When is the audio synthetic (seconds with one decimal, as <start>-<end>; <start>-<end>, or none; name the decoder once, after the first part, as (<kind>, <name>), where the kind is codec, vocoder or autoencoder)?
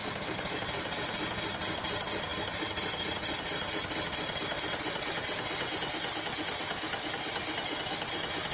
0.0-1.1 (vocoder, BigVGAN v2)